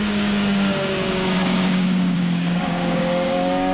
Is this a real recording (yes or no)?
no